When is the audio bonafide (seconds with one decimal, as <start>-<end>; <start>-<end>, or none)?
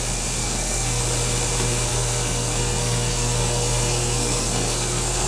0.0-0.4; 1.0-1.9